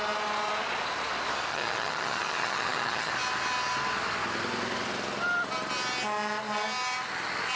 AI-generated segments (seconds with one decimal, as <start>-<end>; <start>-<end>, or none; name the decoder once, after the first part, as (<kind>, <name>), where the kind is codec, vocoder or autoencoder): 1.5-3.1 (vocoder, HiFi-GAN)